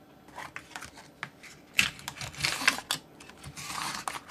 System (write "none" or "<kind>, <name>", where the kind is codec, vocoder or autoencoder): none